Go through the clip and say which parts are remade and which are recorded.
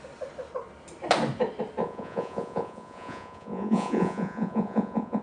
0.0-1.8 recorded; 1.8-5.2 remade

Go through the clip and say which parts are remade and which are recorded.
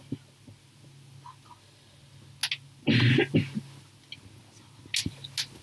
0.0-5.6 recorded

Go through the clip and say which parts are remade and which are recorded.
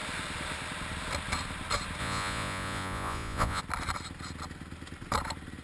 0.0-2.0 recorded; 2.0-3.6 remade; 3.6-5.6 recorded